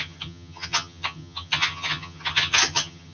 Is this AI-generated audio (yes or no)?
yes